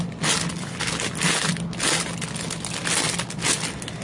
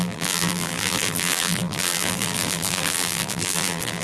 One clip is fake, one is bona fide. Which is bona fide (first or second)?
first